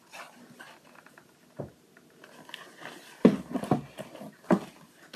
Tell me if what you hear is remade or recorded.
recorded